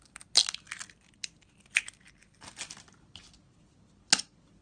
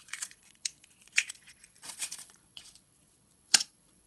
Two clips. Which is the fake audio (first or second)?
second